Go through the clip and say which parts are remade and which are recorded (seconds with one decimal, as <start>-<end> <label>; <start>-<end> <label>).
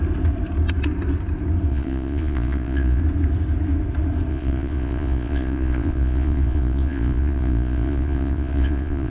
0.0-1.7 recorded; 1.7-3.0 remade; 3.0-4.3 recorded; 4.3-9.1 remade